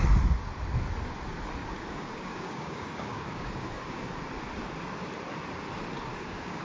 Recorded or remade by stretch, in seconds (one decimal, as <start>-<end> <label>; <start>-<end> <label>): 0.0-1.6 recorded; 1.6-4.2 remade; 4.2-6.1 recorded; 6.1-6.6 remade